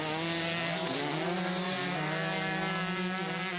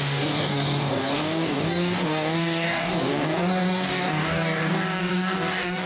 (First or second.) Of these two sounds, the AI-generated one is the second